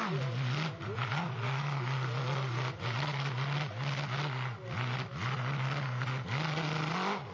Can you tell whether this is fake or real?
real